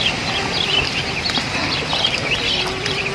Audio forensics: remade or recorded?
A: recorded